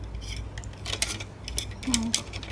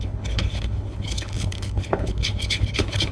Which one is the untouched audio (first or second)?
first